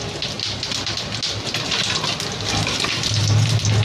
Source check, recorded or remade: recorded